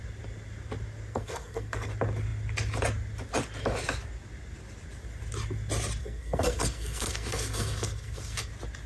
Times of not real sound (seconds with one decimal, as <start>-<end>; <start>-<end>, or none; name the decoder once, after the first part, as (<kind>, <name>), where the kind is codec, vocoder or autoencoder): 1.1-1.9 (codec, SNAC); 6.0-8.5

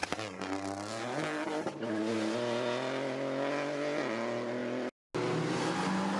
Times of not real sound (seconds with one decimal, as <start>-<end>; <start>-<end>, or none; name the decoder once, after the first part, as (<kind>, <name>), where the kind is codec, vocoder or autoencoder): none

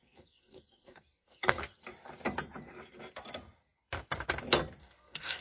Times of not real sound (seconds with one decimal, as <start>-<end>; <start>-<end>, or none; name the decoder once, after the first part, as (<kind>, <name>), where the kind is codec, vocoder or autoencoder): 0.0-1.6 (codec, SNAC); 4.8-5.4

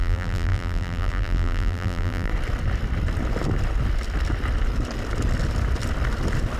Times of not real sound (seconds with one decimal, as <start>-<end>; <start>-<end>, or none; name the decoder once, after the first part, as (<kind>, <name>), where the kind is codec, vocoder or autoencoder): 0.0-2.3 (vocoder, BigVGAN v2)

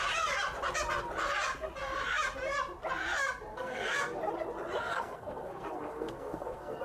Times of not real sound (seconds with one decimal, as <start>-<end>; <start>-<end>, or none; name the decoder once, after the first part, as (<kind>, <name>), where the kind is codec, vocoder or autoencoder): 3.5-4.2 (codec, SNAC); 4.9-6.8

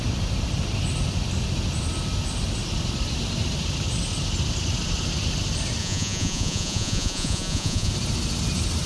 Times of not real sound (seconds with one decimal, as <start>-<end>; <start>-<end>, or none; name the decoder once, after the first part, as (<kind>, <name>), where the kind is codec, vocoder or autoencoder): 5.8-7.9 (vocoder, Vocos)